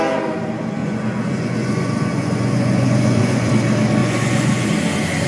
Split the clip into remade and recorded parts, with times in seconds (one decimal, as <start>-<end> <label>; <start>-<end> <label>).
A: 0.0-0.8 recorded; 0.8-3.5 remade; 3.5-4.0 recorded; 4.0-4.6 remade; 4.6-5.3 recorded